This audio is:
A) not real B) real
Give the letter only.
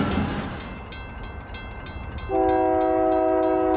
B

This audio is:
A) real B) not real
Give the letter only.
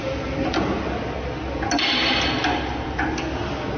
A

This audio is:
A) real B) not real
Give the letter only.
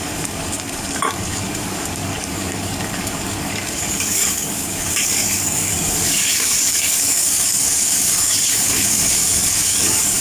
B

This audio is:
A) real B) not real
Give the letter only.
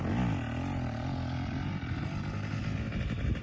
A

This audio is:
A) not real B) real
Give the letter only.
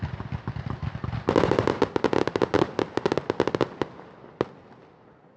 B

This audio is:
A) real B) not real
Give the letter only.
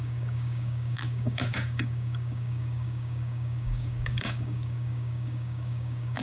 B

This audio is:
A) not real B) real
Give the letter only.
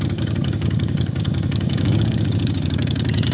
A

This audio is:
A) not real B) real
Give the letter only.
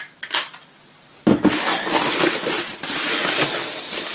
B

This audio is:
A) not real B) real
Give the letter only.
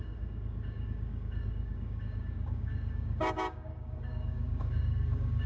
A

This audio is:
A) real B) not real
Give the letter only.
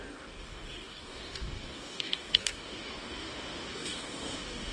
B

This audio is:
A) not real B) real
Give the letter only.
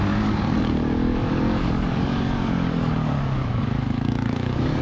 A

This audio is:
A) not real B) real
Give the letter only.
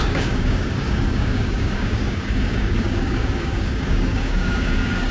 A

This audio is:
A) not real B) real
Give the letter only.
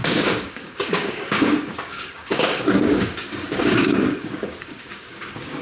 A